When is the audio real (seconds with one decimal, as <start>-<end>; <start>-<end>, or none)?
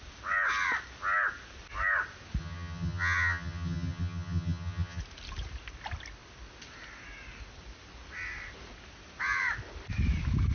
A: 0.0-2.4; 5.0-10.5